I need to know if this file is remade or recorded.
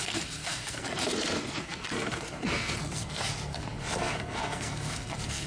remade